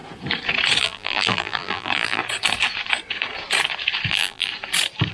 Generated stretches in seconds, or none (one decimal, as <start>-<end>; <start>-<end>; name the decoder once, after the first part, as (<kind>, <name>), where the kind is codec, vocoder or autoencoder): 0.8-2.2 (vocoder, BigVGAN v2); 4.1-4.5